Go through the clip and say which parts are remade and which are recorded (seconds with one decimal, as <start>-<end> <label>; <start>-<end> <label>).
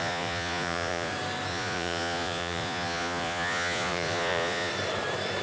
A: 0.0-1.1 remade; 1.1-1.5 recorded; 1.5-4.7 remade; 4.7-5.4 recorded